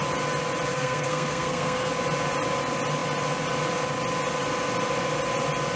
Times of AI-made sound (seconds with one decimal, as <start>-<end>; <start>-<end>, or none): 0.7-1.9